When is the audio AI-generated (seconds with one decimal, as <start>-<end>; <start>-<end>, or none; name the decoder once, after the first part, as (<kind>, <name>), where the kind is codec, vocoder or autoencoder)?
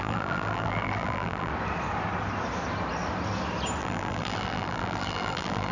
0.0-1.5 (vocoder, BigVGAN v2); 3.8-5.7